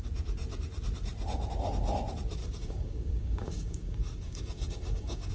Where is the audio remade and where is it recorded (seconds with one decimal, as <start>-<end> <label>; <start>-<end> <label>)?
0.0-2.4 recorded; 2.4-5.3 remade